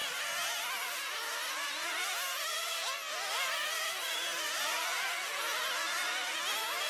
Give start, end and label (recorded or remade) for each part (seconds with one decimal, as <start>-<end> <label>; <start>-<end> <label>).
0.0-6.9 recorded